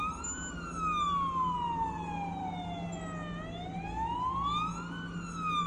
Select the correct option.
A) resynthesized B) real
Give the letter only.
B